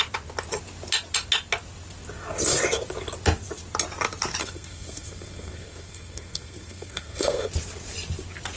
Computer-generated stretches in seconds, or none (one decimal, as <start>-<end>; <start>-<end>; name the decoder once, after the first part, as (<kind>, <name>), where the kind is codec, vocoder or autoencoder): 4.4-7.5 (codec, SNAC)